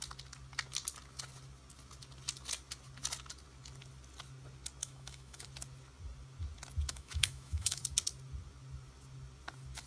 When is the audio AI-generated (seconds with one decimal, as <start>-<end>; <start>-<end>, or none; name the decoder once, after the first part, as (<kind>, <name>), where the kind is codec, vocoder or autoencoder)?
4.8-5.5 (autoencoder, DAC-VAE); 6.9-7.8